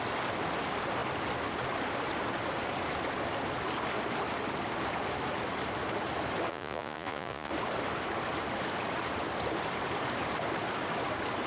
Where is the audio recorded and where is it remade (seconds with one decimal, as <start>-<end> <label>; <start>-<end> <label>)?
0.0-6.5 recorded; 6.5-7.5 remade; 7.5-11.5 recorded